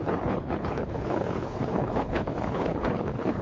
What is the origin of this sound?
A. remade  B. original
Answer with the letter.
A